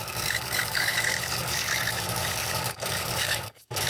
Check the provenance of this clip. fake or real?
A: fake